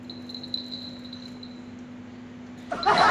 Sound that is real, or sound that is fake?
real